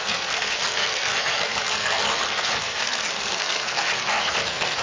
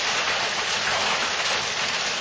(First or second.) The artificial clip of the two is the first